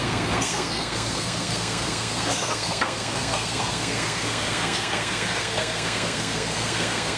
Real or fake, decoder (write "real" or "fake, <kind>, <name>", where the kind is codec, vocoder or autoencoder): fake, codec, SNAC